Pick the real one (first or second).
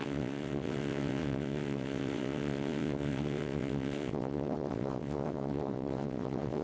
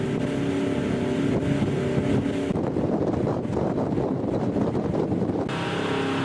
second